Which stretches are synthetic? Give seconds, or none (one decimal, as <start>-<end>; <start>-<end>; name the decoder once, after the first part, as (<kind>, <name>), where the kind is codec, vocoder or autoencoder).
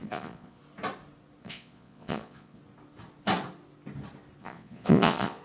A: 0.0-0.6 (vocoder, Vocos); 1.4-2.6; 4.4-5.4